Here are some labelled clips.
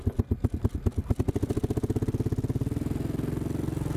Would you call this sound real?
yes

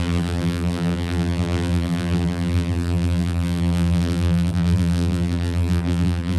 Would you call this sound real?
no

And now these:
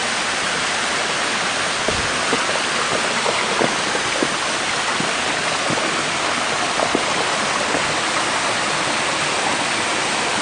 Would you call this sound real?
yes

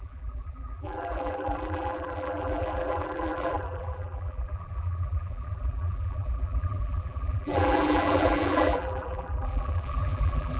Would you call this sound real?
no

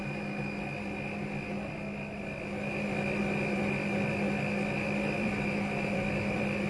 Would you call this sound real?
no